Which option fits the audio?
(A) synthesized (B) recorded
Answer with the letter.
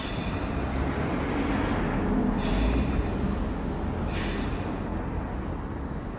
B